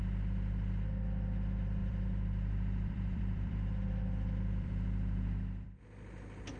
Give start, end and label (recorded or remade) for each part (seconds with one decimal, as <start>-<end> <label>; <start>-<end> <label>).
0.0-1.8 recorded; 1.8-5.8 remade; 5.8-6.6 recorded